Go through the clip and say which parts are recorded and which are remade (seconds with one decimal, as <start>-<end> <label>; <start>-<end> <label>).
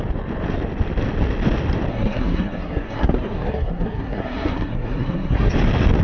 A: 0.0-1.9 recorded; 1.9-5.5 remade; 5.5-6.0 recorded